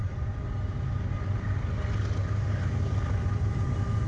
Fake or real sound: real